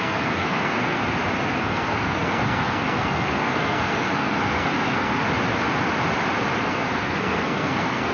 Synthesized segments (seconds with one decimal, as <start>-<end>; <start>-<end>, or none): 0.0-1.0; 1.6-5.2; 6.6-8.1